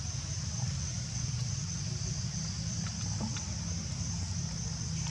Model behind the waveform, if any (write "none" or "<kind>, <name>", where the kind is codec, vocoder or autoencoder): none